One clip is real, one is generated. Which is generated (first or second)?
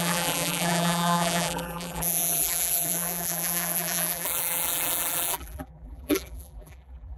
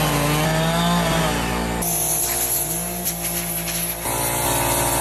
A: first